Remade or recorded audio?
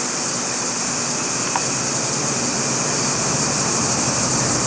recorded